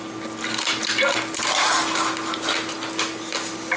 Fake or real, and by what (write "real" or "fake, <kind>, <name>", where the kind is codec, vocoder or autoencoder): real